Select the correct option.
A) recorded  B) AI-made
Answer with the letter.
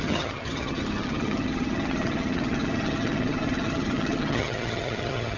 B